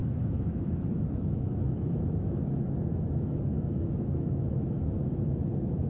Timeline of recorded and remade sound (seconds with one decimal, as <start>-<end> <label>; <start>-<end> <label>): 0.0-5.9 remade